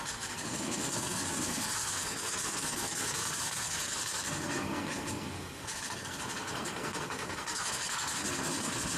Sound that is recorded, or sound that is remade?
remade